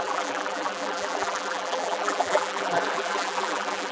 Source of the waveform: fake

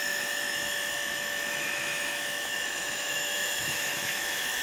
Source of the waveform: fake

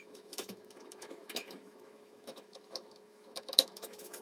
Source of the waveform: fake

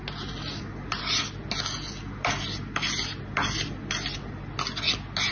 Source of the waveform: real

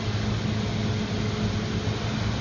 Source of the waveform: real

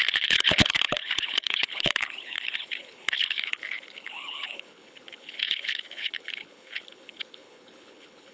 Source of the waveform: fake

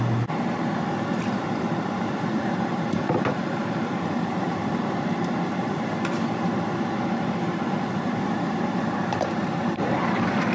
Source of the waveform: fake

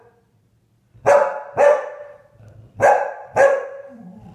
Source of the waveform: real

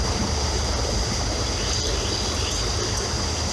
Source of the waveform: real